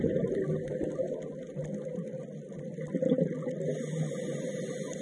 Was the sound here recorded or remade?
recorded